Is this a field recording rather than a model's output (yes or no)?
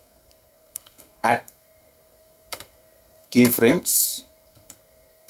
no